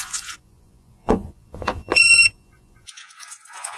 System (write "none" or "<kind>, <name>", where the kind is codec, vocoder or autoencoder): vocoder, Vocos